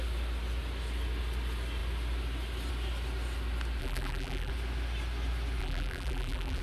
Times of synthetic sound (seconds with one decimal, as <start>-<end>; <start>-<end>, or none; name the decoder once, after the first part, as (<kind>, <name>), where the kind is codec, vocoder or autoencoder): 3.8-4.5 (vocoder, BigVGAN v2); 5.6-6.6